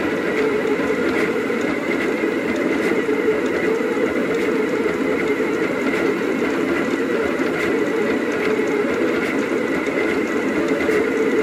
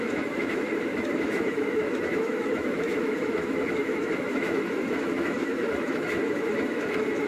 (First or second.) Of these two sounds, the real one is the first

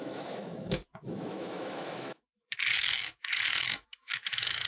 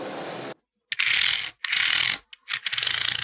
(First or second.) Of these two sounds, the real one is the second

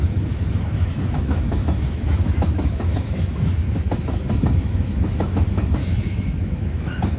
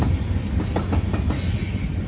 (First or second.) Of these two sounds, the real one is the second